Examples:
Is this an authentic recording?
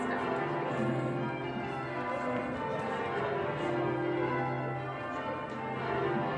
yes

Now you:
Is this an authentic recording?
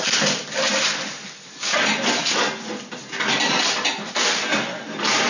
yes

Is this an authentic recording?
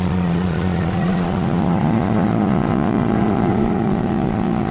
no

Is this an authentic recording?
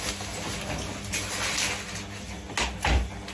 yes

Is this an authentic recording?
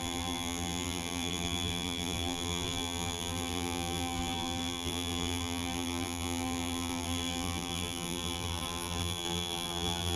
no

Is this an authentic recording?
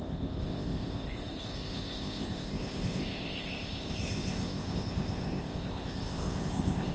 no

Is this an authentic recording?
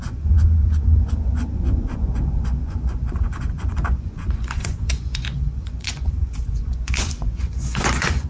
no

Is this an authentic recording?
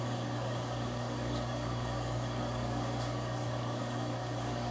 no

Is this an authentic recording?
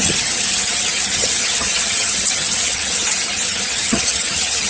no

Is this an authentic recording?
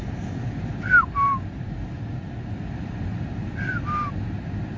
yes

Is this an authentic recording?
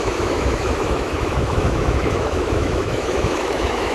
no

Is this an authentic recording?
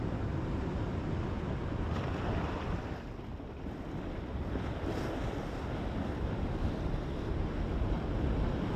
yes